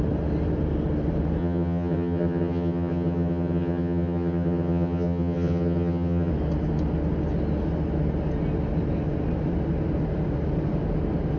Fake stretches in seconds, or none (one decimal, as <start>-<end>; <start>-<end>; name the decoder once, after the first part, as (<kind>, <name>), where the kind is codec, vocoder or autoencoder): 1.4-6.3 (vocoder, HiFi-GAN)